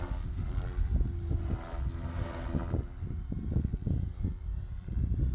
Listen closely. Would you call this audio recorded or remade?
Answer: recorded